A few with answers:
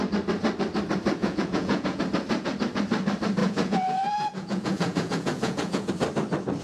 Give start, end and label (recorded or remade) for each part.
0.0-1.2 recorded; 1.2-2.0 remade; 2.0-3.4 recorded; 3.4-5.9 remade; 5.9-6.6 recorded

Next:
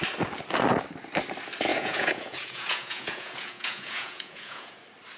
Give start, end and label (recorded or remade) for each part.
0.0-1.7 recorded; 1.7-4.8 remade; 4.8-5.2 recorded

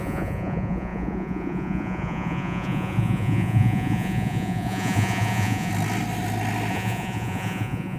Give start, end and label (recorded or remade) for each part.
0.0-5.7 remade; 5.7-6.7 recorded; 6.7-8.0 remade

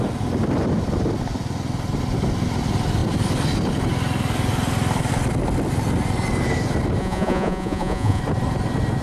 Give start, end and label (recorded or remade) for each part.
0.0-7.0 recorded; 7.0-8.2 remade; 8.2-9.0 recorded

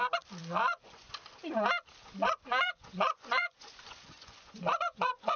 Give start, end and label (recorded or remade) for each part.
0.0-0.4 recorded; 0.4-1.1 remade; 1.1-2.0 recorded; 2.0-5.4 remade

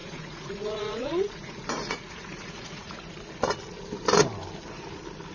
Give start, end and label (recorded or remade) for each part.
0.0-3.1 remade; 3.1-5.3 recorded